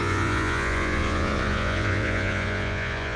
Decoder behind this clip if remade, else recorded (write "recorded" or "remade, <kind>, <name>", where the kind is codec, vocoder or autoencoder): remade, vocoder, Vocos